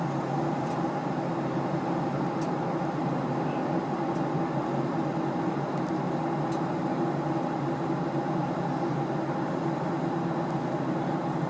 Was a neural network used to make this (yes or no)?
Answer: no